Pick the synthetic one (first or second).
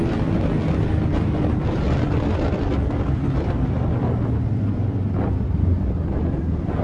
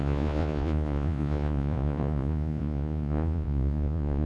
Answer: second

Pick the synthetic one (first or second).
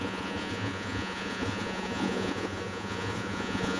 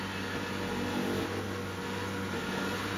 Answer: first